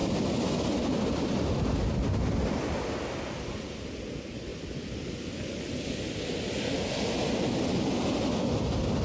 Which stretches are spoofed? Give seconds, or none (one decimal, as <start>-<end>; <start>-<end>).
none